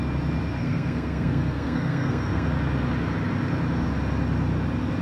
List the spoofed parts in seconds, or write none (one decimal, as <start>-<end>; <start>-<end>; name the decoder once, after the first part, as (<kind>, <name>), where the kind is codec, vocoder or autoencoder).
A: 0.6-2.5 (codec, SNAC)